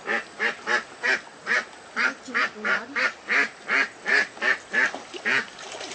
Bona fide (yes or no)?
yes